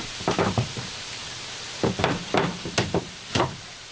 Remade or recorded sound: remade